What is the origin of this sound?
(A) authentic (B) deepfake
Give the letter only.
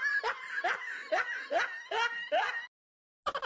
A